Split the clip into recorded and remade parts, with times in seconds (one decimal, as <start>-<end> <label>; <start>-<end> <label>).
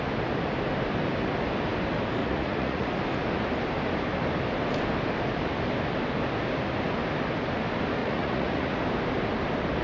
0.0-2.2 recorded; 2.2-2.9 remade; 2.9-8.0 recorded; 8.0-8.7 remade; 8.7-9.8 recorded